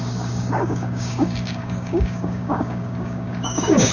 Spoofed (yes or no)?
yes